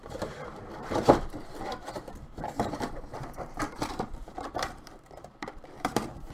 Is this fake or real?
fake